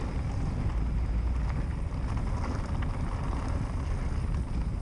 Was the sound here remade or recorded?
recorded